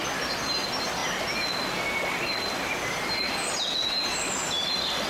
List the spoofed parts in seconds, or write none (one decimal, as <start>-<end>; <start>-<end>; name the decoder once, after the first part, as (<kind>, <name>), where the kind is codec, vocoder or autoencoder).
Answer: none